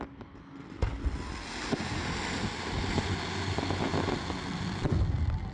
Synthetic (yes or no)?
no